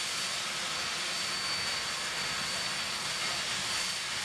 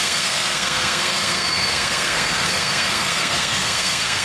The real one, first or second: first